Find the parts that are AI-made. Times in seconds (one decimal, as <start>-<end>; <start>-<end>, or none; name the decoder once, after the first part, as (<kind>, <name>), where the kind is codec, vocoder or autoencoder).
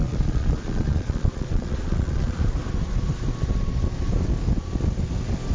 0.0-2.4 (vocoder, Vocos)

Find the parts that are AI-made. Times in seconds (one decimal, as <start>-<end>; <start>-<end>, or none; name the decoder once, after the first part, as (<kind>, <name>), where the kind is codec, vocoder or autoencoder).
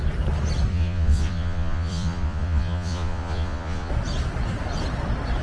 0.7-3.9 (vocoder, Vocos)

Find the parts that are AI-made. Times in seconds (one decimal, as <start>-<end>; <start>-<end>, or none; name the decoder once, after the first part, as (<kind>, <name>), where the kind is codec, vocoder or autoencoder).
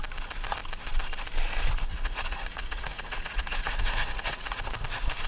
1.9-4.6 (vocoder, Vocos)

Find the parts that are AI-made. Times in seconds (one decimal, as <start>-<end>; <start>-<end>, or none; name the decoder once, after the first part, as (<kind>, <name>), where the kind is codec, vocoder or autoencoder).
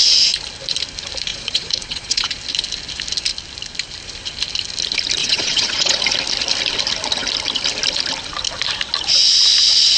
1.3-2.3 (vocoder, Vocos); 5.2-6.0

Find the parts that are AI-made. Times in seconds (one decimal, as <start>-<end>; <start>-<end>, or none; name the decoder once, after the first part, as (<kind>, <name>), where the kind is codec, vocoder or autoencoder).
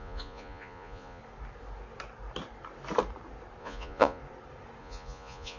0.0-1.2 (vocoder, Vocos); 3.6-4.2; 4.8-5.6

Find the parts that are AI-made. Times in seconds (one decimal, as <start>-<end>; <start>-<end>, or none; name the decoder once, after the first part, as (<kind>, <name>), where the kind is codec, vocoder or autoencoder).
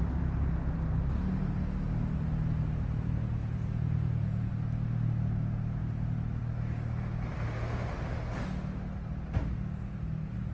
3.4-4.5 (vocoder, Vocos)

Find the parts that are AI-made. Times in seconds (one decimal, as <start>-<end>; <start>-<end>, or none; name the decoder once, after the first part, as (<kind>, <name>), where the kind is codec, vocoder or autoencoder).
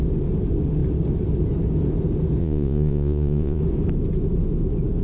2.4-3.6 (vocoder, Vocos)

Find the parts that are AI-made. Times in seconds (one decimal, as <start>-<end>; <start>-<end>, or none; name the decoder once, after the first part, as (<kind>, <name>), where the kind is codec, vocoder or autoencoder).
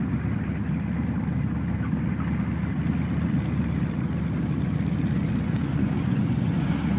5.6-7.0 (vocoder, Vocos)